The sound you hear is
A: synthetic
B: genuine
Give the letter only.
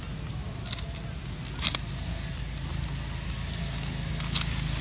B